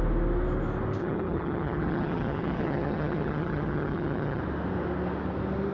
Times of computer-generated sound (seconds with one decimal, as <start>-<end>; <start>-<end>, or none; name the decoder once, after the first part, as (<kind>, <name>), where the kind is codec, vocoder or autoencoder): 1.0-4.4 (vocoder, HiFi-GAN)